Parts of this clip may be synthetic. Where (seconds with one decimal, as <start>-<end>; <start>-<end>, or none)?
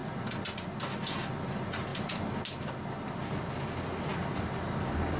none